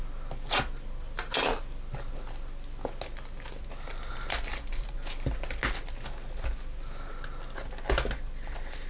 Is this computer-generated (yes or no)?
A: no